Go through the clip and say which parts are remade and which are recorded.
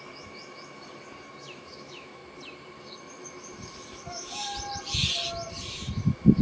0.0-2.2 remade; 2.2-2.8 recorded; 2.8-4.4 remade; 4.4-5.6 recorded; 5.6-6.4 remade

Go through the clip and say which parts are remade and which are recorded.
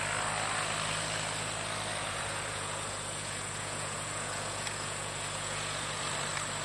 0.0-2.0 recorded; 2.0-6.0 remade; 6.0-6.6 recorded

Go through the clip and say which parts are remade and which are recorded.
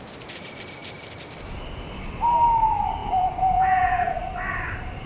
0.0-3.0 recorded; 3.0-4.2 remade; 4.2-5.1 recorded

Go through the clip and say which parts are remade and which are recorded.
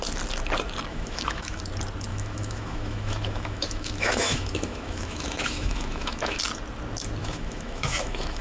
0.0-0.9 recorded; 0.9-1.6 remade; 1.6-2.1 recorded; 2.1-6.4 remade; 6.4-7.2 recorded; 7.2-8.4 remade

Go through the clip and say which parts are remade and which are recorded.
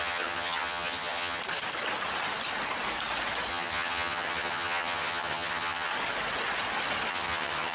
0.0-1.4 remade; 1.4-3.5 recorded; 3.5-5.9 remade; 5.9-7.1 recorded; 7.1-7.7 remade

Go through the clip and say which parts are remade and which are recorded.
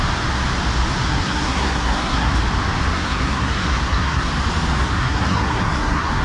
0.0-1.1 recorded; 1.1-2.3 remade; 2.3-2.9 recorded; 2.9-4.3 remade; 4.3-4.8 recorded; 4.8-6.2 remade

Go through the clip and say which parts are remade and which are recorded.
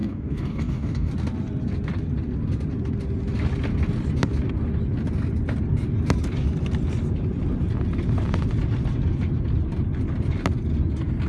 0.0-1.1 remade; 1.1-11.3 recorded